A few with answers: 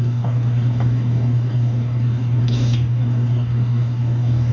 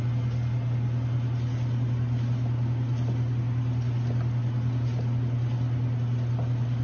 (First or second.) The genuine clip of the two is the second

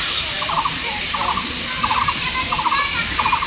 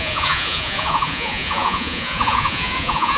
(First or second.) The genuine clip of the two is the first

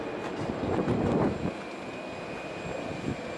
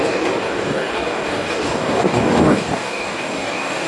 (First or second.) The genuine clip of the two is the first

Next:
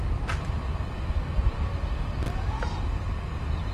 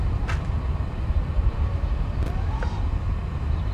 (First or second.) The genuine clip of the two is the first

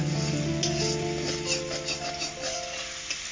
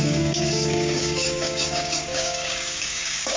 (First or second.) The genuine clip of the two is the first